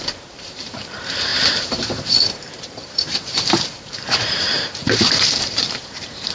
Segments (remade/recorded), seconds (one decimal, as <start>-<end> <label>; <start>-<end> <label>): 0.0-6.3 remade